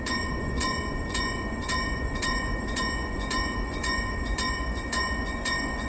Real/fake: fake